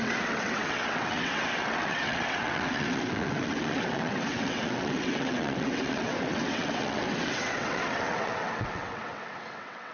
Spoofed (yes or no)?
yes